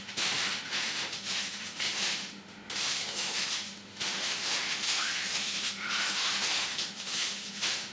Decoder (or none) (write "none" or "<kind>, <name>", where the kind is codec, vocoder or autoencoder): autoencoder, DAC-VAE